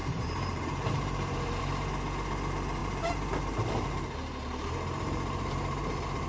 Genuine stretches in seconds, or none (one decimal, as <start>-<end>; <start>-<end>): 1.6-2.8